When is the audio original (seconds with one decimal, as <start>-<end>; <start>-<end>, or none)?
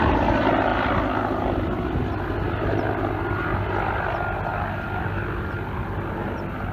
0.0-4.5